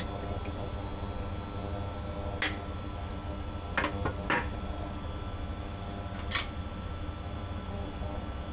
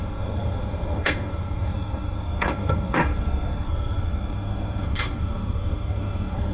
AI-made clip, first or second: second